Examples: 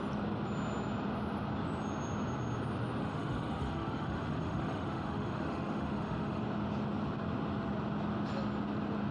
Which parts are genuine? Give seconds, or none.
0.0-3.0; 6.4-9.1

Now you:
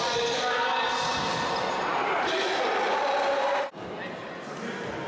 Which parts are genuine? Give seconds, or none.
0.0-5.1

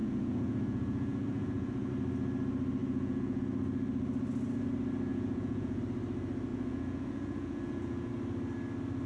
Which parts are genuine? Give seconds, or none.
1.9-2.8; 3.4-5.1; 5.8-6.5; 8.1-9.1

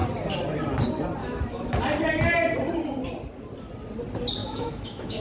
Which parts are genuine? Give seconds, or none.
0.0-1.2; 1.8-4.4

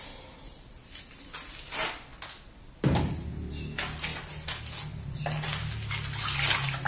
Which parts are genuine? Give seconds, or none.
0.0-6.9

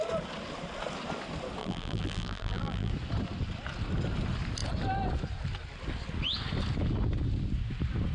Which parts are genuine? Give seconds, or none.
0.0-1.6; 2.9-8.1